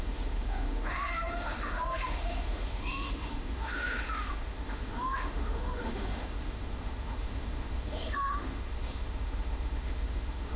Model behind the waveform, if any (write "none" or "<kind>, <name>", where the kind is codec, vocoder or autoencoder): autoencoder, DAC-VAE